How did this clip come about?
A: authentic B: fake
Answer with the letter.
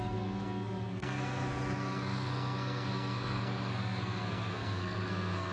B